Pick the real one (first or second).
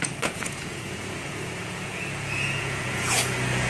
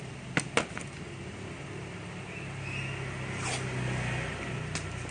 second